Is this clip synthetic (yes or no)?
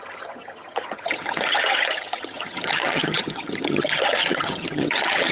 yes